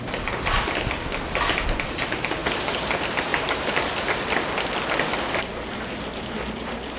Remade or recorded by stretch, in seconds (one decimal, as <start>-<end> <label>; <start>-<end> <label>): 0.0-3.3 recorded; 3.3-3.9 remade; 3.9-7.0 recorded